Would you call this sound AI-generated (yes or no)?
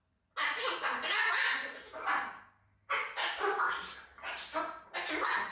no